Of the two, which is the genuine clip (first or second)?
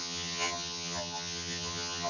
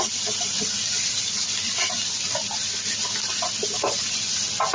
second